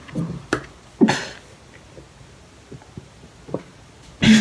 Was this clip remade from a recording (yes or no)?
no